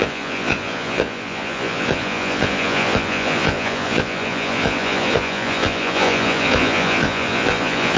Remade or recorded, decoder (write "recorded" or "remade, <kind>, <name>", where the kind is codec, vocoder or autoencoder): remade, vocoder, Vocos